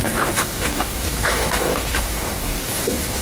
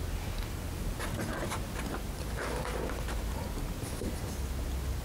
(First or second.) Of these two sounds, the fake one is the first